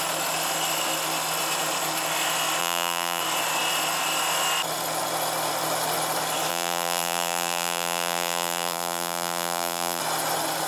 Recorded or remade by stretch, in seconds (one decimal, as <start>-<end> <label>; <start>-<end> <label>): 0.0-2.6 recorded; 2.6-3.2 remade; 3.2-6.5 recorded; 6.5-10.0 remade; 10.0-10.7 recorded